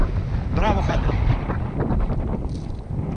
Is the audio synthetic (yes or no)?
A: yes